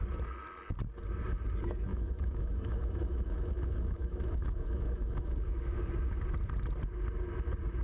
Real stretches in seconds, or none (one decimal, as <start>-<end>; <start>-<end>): 0.0-1.9; 5.8-7.8